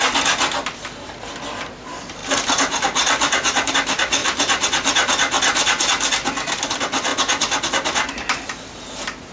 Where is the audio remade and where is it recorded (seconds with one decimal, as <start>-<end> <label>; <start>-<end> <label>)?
0.0-2.2 recorded; 2.2-3.7 remade; 3.7-4.2 recorded; 4.2-5.8 remade; 5.8-9.3 recorded